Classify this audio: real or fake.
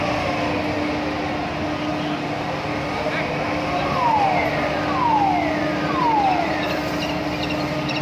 real